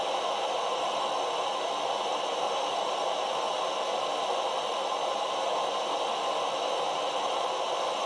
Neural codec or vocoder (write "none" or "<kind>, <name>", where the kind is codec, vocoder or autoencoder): none